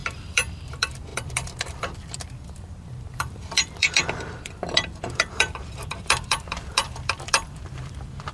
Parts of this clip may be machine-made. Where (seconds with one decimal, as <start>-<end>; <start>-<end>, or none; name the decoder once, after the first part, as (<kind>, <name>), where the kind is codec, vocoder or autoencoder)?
0.0-8.3 (vocoder, BigVGAN v2)